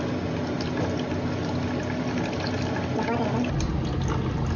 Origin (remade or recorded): recorded